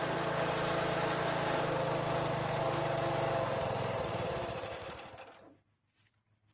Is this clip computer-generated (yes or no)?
no